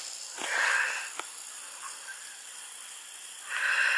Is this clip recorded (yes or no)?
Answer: yes